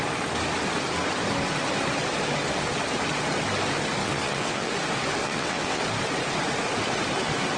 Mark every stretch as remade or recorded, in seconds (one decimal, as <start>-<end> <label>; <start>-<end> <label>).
0.0-4.0 recorded; 4.0-4.7 remade; 4.7-5.2 recorded; 5.2-5.8 remade; 5.8-7.6 recorded